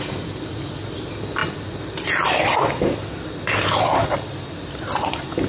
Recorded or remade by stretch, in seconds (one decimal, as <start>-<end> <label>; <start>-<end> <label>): 0.0-5.5 recorded